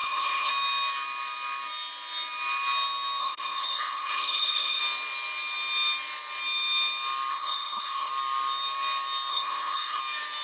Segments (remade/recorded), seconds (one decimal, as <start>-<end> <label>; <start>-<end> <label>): 0.0-0.5 remade; 0.5-3.2 recorded; 3.2-4.8 remade; 4.8-7.3 recorded; 7.3-8.1 remade; 8.1-9.3 recorded; 9.3-10.0 remade; 10.0-10.4 recorded